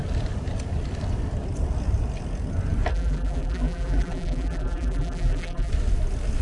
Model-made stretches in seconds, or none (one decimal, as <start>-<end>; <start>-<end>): 2.9-5.7